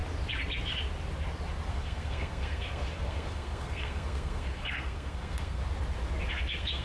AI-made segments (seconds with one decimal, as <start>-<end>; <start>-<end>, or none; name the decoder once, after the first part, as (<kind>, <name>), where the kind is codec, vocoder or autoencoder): 1.7-5.6 (codec, SNAC); 6.3-6.8

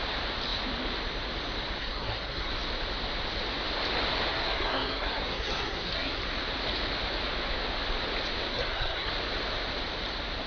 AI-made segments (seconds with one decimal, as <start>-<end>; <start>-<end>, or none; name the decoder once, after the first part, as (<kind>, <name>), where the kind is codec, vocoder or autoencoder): 1.8-2.5 (codec, SNAC); 4.3-6.2; 8.5-9.1

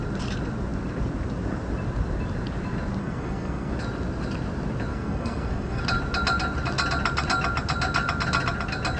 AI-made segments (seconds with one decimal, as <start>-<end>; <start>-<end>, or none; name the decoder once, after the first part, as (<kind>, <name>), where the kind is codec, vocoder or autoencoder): 3.0-3.7 (codec, SNAC); 4.9-5.8